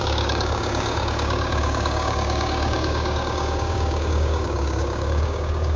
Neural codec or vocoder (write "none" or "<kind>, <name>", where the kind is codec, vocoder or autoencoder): codec, DAC